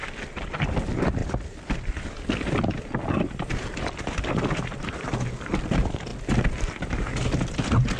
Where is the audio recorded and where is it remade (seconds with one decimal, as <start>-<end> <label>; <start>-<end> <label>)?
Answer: 0.0-8.0 recorded